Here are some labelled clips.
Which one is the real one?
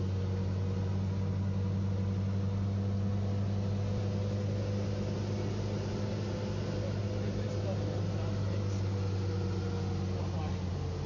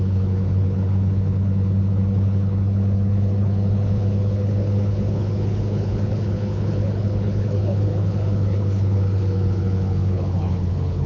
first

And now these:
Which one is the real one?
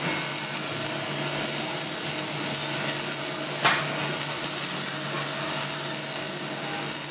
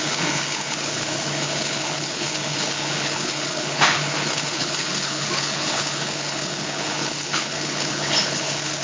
first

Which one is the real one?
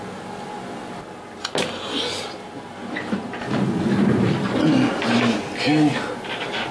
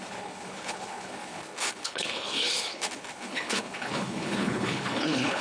first